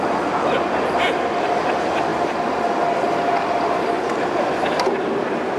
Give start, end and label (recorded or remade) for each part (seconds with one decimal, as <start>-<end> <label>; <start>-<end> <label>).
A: 0.0-5.6 recorded